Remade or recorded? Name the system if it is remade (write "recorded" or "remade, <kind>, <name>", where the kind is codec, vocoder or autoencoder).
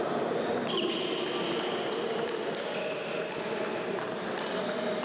recorded